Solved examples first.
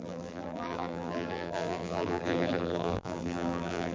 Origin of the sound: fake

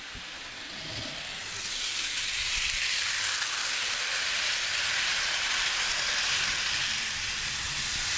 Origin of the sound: real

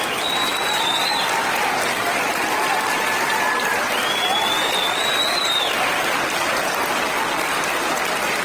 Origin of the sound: fake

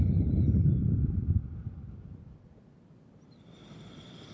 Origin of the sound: real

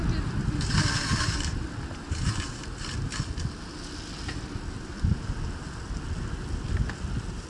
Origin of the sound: real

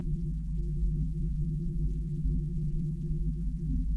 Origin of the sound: fake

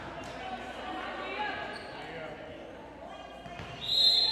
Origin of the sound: real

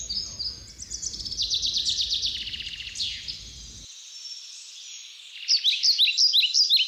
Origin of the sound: real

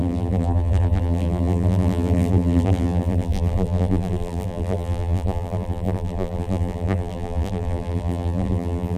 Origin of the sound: fake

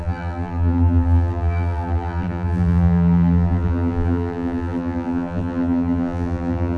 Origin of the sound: fake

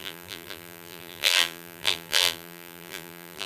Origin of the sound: fake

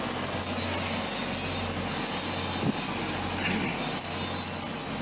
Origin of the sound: real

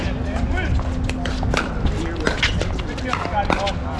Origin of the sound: real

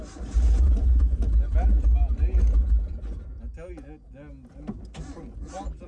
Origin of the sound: real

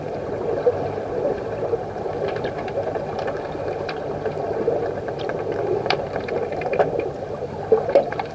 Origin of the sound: fake